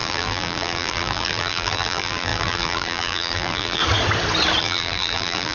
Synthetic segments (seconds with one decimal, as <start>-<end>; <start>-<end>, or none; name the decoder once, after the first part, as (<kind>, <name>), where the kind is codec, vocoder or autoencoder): 0.0-3.8 (vocoder, BigVGAN v2); 4.6-5.5